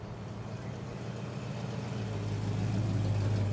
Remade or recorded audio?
recorded